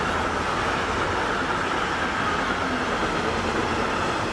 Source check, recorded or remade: recorded